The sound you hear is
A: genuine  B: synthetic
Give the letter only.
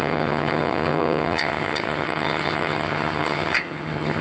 B